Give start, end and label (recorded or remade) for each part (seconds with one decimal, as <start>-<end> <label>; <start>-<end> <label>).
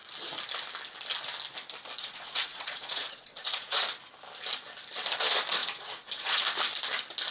0.0-2.0 recorded; 2.0-3.8 remade; 3.8-5.6 recorded; 5.6-6.4 remade; 6.4-7.3 recorded